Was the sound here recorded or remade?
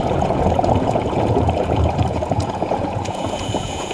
remade